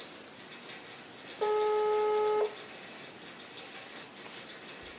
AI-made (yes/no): no